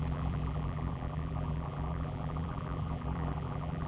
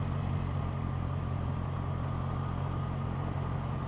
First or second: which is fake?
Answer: first